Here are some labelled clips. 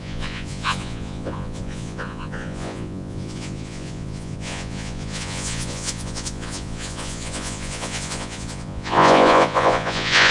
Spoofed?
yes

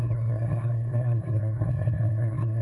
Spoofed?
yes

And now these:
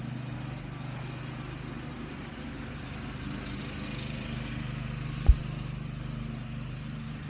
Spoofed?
no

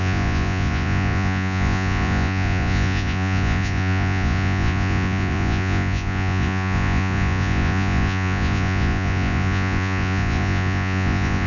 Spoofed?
yes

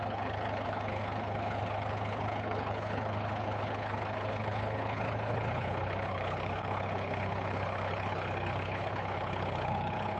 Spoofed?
yes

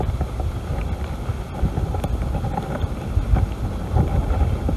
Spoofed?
no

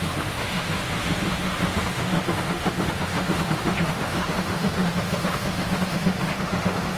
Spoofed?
yes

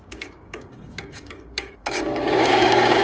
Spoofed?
yes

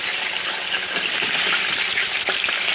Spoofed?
no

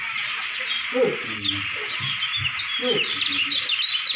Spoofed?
no